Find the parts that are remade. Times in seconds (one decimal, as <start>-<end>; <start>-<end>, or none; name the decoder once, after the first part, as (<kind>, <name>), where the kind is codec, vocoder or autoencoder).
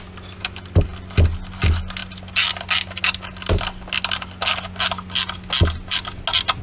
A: none